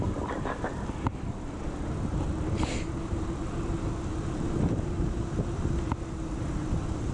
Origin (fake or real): real